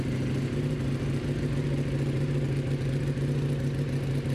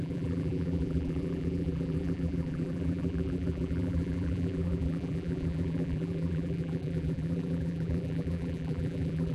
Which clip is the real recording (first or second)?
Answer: first